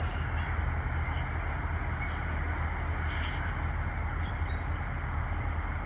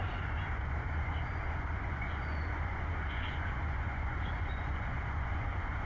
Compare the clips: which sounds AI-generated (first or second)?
second